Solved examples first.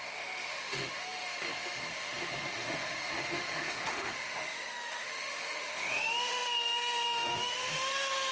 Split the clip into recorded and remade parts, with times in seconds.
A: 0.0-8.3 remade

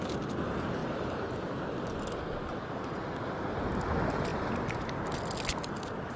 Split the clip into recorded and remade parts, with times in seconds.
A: 0.0-6.2 recorded

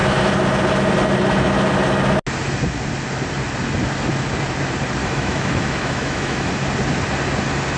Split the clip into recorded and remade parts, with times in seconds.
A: 0.0-5.0 recorded; 5.0-6.5 remade; 6.5-7.8 recorded

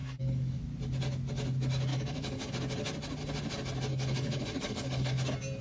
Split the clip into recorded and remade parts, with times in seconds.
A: 0.0-0.6 remade; 0.6-1.9 recorded; 1.9-2.5 remade; 2.5-3.9 recorded; 3.9-5.1 remade; 5.1-5.6 recorded

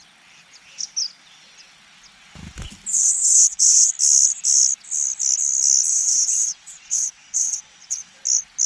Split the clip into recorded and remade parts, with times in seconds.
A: 0.0-2.9 recorded; 2.9-3.9 remade; 3.9-5.9 recorded; 5.9-8.2 remade; 8.2-8.7 recorded

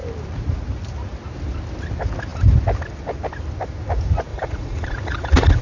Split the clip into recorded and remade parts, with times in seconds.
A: 0.0-4.3 recorded; 4.3-5.6 remade

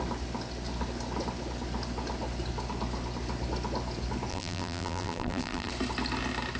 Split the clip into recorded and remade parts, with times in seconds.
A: 0.0-4.3 recorded; 4.3-5.7 remade; 5.7-6.6 recorded